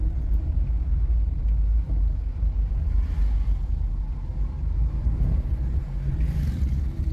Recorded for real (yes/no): yes